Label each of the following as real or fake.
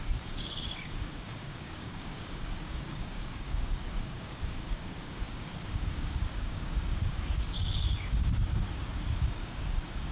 fake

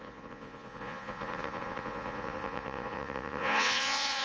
fake